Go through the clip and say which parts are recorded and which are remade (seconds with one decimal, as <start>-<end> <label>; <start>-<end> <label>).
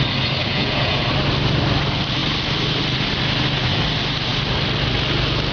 0.0-0.4 recorded; 0.4-1.0 remade; 1.0-5.5 recorded